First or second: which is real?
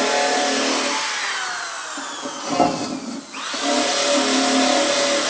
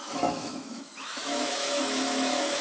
first